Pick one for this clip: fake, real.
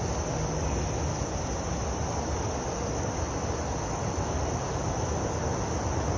real